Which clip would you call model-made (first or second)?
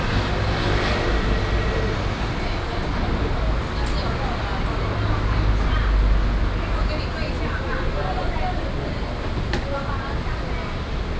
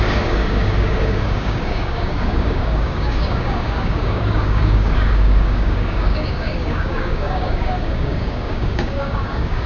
second